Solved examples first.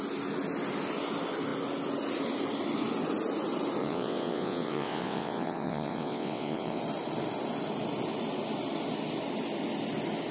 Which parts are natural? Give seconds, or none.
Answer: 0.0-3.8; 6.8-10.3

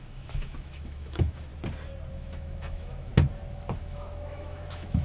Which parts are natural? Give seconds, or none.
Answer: 1.5-2.1; 3.1-3.8

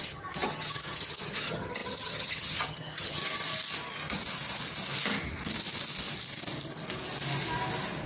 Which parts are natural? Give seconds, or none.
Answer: 3.2-8.1